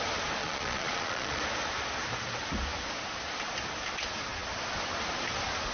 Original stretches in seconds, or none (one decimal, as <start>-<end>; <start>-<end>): 0.0-0.4; 1.4-5.7